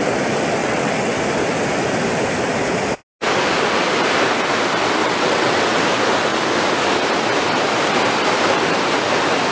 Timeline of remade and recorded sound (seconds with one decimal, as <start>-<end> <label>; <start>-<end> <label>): 0.0-0.6 recorded; 0.6-1.2 remade; 1.2-5.0 recorded; 5.0-5.8 remade; 5.8-9.5 recorded